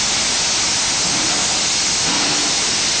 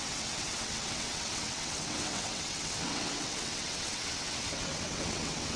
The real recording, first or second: first